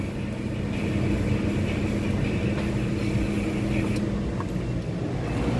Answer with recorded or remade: recorded